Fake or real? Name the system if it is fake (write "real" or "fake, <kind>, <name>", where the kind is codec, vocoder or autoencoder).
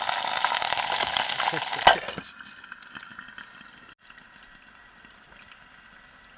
real